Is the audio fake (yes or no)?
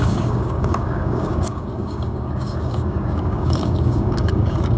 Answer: yes